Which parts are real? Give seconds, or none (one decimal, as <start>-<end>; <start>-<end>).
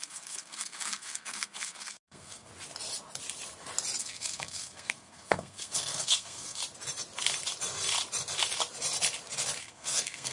2.5-4.0; 6.6-9.6